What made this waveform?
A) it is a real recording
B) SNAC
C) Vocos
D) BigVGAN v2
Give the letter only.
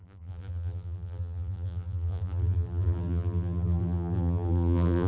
D